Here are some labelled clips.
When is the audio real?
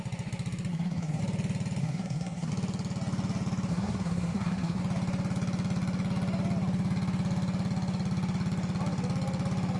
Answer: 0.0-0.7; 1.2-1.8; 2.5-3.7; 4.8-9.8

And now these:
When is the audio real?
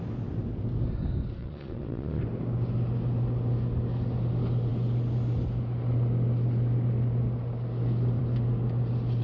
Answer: 0.0-1.4; 2.2-9.2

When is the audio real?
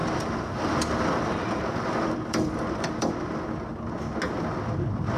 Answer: 3.1-5.2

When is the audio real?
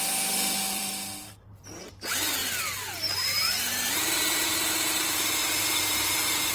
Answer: none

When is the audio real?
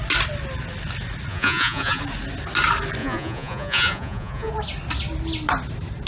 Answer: 0.0-1.3; 2.0-3.0; 4.5-6.1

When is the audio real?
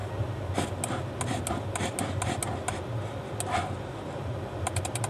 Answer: 0.0-5.1